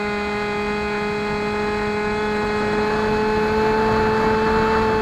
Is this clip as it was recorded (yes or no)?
yes